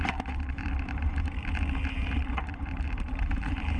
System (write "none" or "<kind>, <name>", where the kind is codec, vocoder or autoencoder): vocoder, BigVGAN v2